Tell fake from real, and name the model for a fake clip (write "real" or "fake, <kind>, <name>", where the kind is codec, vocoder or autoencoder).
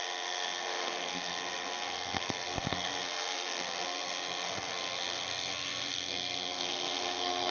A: fake, codec, SNAC